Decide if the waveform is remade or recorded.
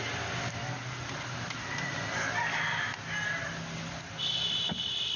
recorded